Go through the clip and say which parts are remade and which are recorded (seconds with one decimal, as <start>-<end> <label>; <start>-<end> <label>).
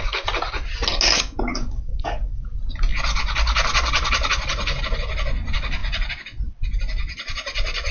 0.0-1.5 recorded; 1.5-2.4 remade; 2.4-7.9 recorded